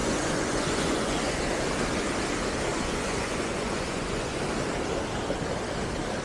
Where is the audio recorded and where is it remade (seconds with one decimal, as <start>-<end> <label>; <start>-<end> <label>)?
0.0-1.4 remade; 1.4-2.7 recorded; 2.7-4.4 remade; 4.4-6.2 recorded